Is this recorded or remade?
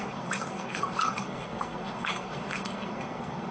remade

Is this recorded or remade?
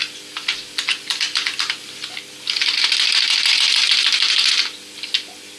recorded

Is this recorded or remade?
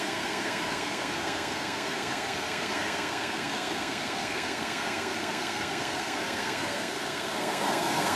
remade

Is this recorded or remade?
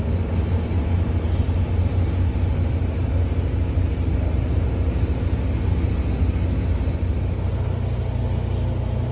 recorded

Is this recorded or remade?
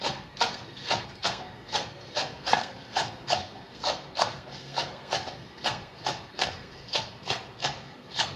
remade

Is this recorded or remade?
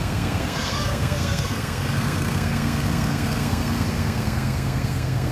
remade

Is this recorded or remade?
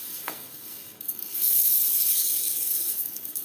remade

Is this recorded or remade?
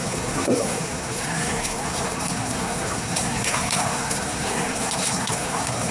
remade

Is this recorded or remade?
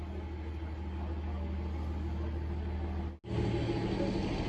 recorded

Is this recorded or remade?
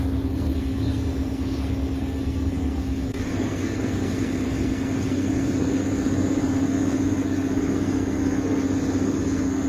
remade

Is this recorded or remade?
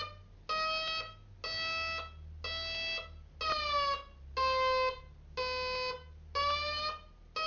recorded